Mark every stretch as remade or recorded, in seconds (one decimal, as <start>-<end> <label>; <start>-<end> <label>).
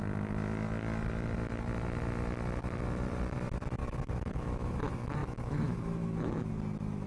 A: 0.0-3.8 recorded; 3.8-4.8 remade; 4.8-5.2 recorded; 5.2-6.5 remade; 6.5-7.1 recorded